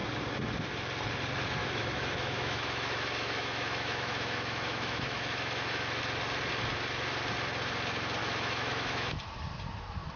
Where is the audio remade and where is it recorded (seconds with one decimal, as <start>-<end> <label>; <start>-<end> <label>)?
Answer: 0.0-1.6 recorded; 1.6-6.0 remade; 6.0-8.2 recorded; 8.2-9.2 remade; 9.2-10.2 recorded